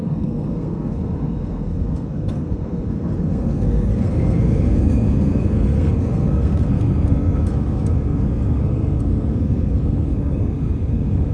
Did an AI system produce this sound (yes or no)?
yes